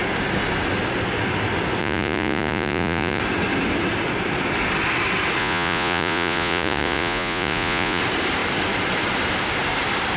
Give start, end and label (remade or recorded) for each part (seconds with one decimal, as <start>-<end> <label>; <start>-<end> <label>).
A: 0.0-1.8 recorded; 1.8-3.2 remade; 3.2-5.4 recorded; 5.4-8.0 remade; 8.0-10.2 recorded